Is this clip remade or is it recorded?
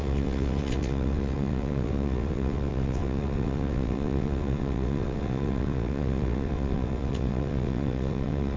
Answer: remade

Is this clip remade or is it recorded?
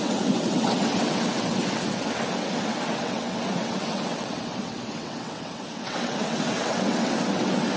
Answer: remade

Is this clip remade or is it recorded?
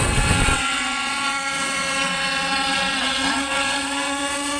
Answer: remade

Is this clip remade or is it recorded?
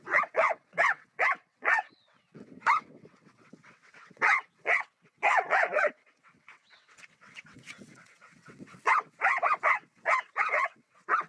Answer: remade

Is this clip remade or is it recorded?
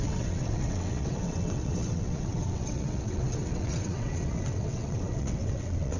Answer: remade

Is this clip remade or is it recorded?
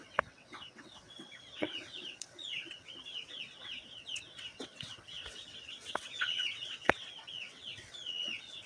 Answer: remade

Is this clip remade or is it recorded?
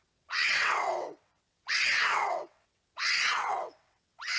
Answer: remade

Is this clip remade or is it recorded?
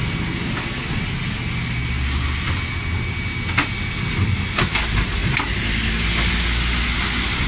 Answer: recorded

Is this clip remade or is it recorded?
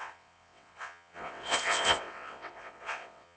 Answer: remade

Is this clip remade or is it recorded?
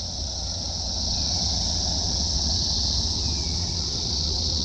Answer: remade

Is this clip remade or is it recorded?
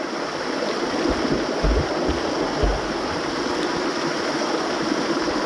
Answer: recorded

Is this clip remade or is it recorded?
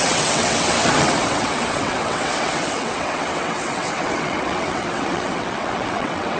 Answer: remade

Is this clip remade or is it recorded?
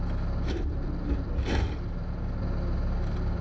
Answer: recorded